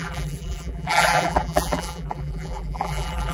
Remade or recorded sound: remade